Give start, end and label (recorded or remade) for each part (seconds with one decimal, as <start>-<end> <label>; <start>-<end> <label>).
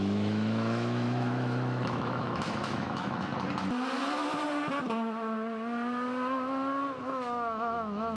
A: 0.0-3.3 remade; 3.3-7.0 recorded; 7.0-8.2 remade